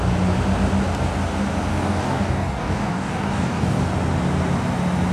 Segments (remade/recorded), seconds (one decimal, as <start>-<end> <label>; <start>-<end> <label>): 0.0-1.7 recorded; 1.7-3.8 remade; 3.8-5.1 recorded